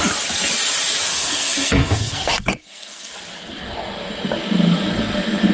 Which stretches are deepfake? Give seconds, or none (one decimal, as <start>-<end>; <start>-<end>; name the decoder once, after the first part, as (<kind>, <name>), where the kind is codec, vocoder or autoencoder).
1.1-3.1 (codec, SNAC)